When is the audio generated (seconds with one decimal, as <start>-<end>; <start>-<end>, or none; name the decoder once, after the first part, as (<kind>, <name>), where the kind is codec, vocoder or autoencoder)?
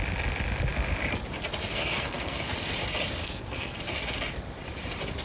1.7-2.5 (codec, SNAC); 3.2-3.8